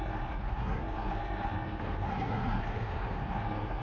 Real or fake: fake